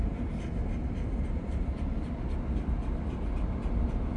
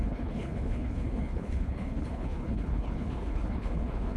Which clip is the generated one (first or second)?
second